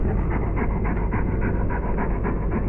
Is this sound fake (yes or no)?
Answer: no